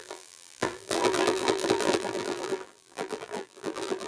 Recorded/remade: remade